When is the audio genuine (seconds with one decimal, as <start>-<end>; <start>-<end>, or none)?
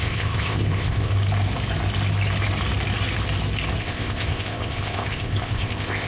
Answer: 1.1-3.8